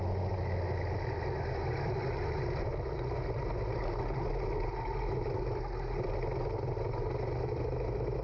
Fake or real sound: real